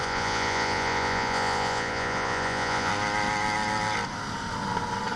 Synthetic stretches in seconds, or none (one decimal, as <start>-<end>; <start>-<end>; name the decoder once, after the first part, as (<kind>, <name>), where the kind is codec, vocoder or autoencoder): 0.0-2.9 (vocoder, Vocos)

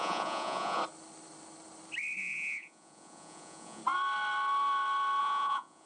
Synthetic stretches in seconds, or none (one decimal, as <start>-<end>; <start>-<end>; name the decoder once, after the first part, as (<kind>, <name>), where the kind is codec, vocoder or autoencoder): 0.0-0.8 (vocoder, Vocos); 2.2-3.8; 5.2-5.9

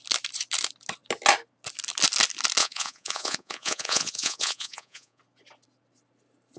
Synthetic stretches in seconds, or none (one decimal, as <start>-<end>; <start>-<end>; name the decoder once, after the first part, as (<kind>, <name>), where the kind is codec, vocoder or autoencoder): 2.6-5.2 (vocoder, Vocos)